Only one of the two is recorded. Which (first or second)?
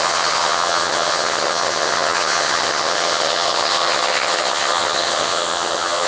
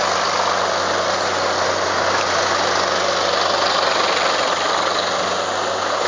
second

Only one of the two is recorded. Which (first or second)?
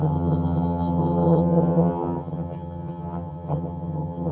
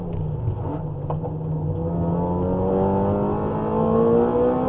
second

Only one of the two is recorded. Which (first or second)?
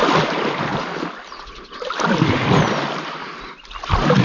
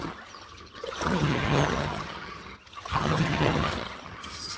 first